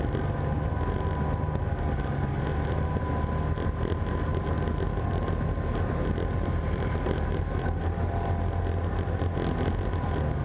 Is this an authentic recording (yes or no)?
yes